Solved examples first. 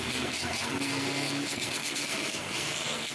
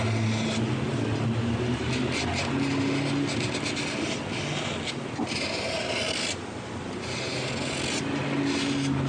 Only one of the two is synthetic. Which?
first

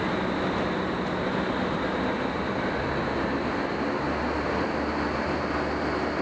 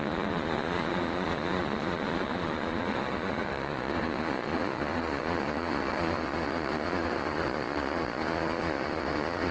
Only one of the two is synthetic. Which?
second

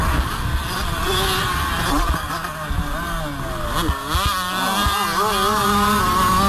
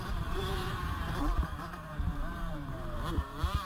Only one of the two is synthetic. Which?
second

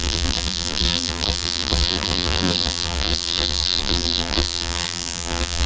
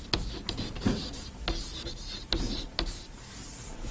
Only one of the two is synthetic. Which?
first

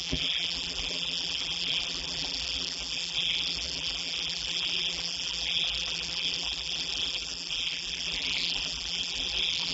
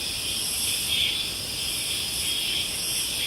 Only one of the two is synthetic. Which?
first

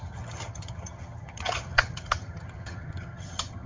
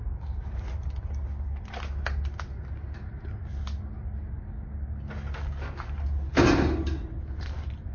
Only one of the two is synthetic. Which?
first